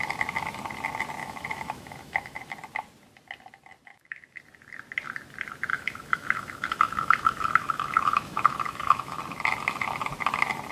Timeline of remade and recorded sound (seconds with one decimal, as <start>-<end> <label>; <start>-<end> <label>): 0.0-1.2 recorded; 1.2-2.4 remade; 2.4-3.9 recorded; 3.9-4.4 remade; 4.4-5.7 recorded; 5.7-9.2 remade; 9.2-10.7 recorded